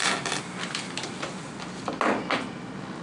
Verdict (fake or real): real